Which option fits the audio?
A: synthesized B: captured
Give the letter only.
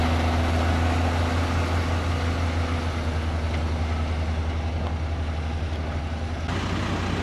B